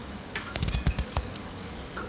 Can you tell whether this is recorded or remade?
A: remade